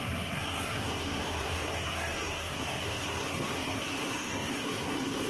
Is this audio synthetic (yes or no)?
yes